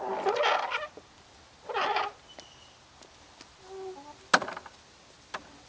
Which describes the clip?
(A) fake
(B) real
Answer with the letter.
B